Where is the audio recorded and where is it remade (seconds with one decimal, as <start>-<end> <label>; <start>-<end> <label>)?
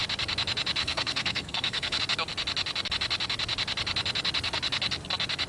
0.0-0.8 recorded; 0.8-2.0 remade; 2.0-5.5 recorded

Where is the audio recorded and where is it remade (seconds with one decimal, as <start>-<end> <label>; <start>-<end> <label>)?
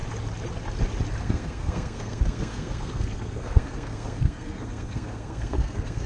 0.0-1.2 recorded; 1.2-6.1 remade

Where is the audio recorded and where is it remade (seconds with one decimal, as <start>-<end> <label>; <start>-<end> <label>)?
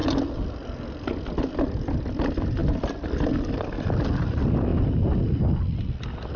0.0-6.4 recorded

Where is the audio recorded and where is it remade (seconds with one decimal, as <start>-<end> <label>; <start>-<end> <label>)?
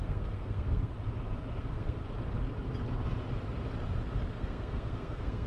0.0-0.9 remade; 0.9-1.6 recorded; 1.6-2.0 remade; 2.0-4.3 recorded; 4.3-5.5 remade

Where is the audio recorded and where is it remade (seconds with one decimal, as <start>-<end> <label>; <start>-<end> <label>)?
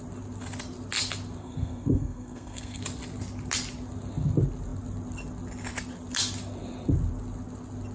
0.0-1.4 recorded; 1.4-2.8 remade; 2.8-7.9 recorded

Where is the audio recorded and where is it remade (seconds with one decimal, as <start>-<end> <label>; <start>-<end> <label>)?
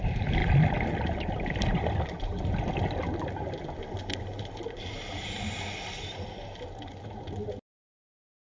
0.0-8.6 recorded